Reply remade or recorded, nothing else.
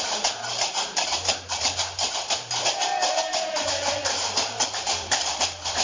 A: remade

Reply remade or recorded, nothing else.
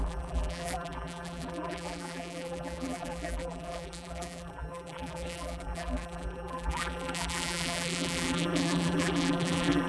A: remade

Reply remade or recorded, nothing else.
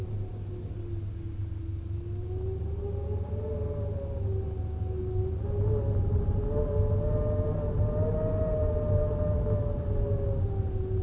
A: recorded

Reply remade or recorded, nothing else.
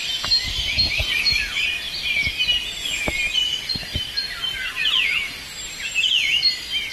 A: recorded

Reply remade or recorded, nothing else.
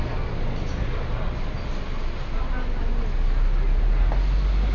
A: recorded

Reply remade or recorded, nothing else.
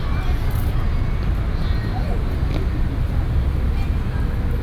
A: recorded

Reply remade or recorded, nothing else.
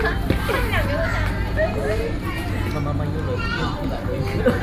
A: recorded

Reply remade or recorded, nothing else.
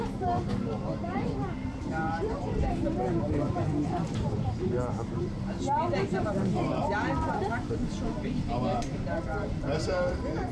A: remade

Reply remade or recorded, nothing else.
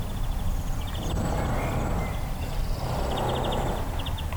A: recorded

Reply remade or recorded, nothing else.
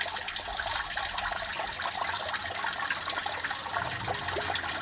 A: recorded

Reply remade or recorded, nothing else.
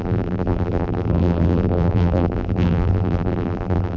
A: remade